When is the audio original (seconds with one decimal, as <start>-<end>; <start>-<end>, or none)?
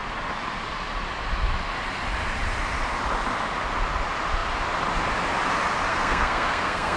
0.0-5.9